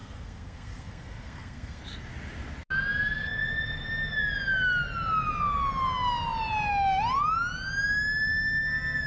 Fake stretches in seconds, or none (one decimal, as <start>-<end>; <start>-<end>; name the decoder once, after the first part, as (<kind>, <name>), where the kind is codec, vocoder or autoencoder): 0.0-1.8 (codec, SNAC)